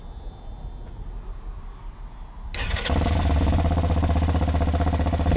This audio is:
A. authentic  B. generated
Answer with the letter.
A